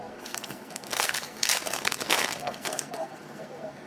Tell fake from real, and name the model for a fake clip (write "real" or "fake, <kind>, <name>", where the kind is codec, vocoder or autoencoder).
fake, codec, SNAC